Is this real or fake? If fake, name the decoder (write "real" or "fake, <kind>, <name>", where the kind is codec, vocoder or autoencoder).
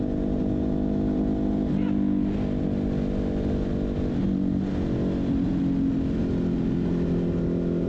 real